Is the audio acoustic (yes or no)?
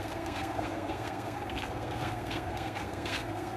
no